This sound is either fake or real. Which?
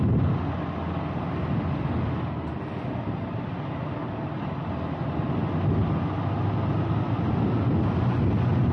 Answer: real